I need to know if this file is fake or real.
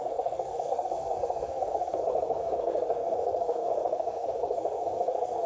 fake